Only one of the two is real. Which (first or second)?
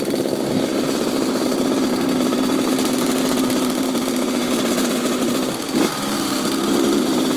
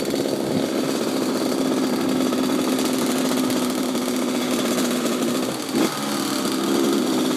second